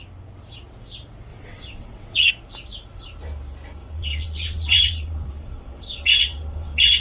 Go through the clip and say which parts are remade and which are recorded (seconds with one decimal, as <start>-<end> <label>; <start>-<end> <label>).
0.0-1.3 recorded; 1.3-2.3 remade; 2.3-3.8 recorded; 3.8-7.0 remade